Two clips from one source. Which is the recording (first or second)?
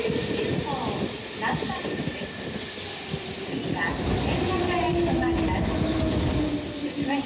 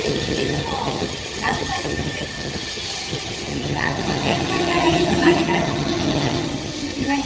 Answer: first